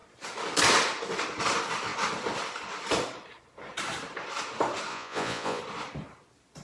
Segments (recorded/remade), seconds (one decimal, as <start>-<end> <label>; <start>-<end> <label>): 0.0-4.9 recorded; 4.9-5.6 remade; 5.6-6.6 recorded